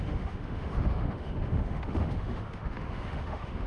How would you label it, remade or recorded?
remade